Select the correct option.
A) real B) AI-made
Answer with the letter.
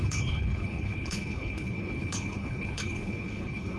B